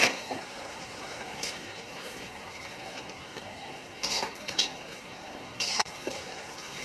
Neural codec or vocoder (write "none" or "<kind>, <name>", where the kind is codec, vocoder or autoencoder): codec, SNAC